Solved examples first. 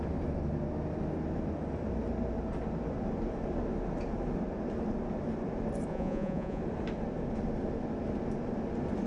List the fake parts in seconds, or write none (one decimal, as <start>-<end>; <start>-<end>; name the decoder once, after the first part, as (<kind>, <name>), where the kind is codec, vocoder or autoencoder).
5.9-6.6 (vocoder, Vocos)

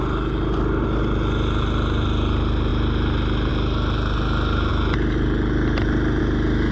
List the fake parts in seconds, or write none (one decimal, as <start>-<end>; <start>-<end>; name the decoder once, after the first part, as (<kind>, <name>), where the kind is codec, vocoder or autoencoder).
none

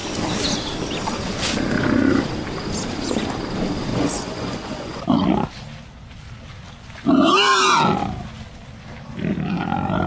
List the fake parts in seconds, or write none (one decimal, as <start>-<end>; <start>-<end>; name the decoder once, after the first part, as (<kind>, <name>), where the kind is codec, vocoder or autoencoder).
3.9-5.0 (vocoder, Vocos)